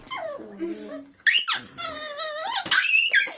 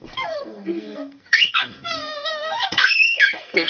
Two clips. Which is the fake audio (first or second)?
second